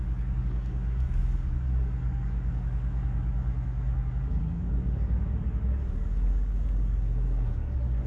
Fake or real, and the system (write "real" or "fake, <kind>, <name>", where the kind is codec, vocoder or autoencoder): fake, codec, DAC